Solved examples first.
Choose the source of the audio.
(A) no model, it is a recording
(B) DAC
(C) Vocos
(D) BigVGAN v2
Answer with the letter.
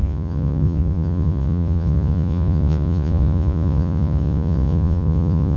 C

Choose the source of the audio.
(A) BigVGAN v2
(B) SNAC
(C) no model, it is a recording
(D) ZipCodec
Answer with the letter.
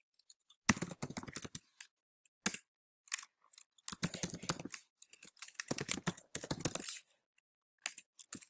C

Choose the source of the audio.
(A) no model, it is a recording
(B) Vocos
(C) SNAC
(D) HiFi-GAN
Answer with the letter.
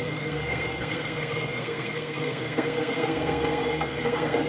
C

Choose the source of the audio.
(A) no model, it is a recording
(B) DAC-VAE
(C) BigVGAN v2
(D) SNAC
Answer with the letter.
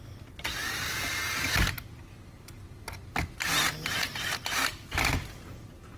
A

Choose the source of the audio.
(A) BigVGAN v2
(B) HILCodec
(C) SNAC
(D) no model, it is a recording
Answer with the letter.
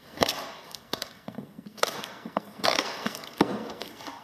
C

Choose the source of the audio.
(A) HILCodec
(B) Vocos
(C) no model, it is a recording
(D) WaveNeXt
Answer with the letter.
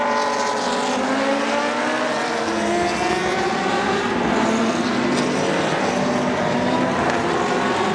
C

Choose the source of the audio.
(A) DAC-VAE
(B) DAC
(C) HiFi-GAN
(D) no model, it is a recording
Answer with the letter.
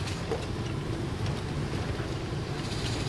D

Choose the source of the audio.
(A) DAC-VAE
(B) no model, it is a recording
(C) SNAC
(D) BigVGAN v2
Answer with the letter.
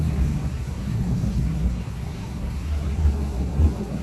C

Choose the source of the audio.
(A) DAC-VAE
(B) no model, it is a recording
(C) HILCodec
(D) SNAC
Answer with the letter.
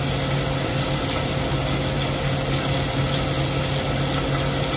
B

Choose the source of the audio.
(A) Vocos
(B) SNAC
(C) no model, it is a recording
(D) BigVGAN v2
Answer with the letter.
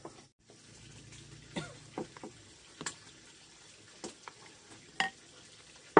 C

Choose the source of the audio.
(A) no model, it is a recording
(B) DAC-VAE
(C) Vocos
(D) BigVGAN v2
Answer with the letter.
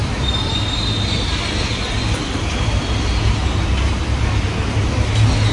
A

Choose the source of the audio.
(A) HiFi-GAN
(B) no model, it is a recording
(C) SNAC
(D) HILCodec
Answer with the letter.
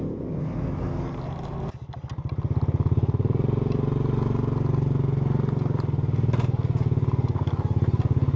B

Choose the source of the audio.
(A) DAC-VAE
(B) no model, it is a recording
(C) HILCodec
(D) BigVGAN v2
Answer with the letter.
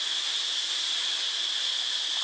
B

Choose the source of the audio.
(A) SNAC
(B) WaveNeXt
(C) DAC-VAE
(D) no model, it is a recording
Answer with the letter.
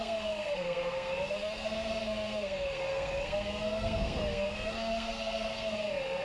A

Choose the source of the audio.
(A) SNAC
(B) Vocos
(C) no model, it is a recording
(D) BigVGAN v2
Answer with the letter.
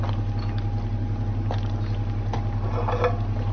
C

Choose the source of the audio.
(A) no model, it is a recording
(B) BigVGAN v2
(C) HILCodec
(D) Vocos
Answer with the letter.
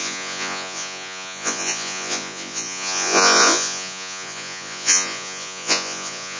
D